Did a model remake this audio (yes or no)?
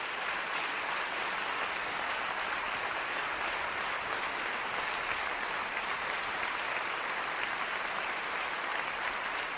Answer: no